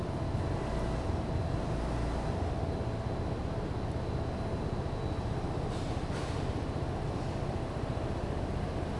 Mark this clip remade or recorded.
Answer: recorded